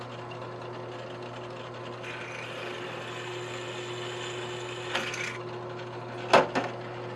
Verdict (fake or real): real